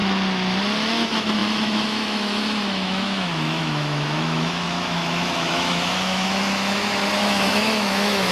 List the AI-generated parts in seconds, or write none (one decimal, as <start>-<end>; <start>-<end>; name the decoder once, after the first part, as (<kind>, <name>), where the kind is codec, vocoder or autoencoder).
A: 0.9-8.3 (autoencoder, DAC-VAE)